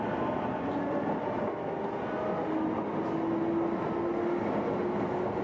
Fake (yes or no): no